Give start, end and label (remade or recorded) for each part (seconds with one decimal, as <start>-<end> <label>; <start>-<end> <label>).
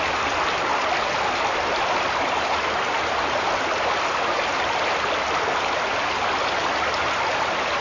0.0-7.8 recorded